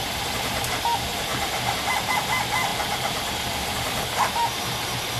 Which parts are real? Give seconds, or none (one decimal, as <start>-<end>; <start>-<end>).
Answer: none